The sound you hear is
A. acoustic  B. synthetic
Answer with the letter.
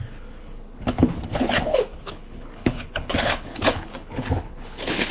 B